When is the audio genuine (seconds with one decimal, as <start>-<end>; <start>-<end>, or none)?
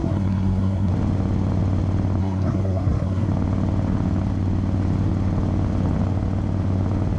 0.9-2.2; 3.3-7.2